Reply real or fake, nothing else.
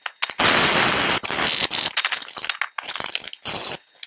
real